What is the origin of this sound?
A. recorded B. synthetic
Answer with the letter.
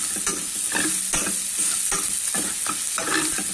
A